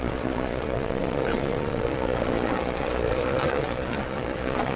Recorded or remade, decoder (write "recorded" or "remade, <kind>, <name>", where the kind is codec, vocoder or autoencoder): remade, vocoder, Vocos